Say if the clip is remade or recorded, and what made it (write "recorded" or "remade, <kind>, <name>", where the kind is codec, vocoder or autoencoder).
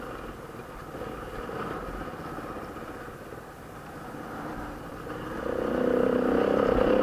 recorded